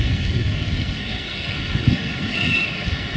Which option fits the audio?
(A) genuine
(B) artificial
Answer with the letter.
B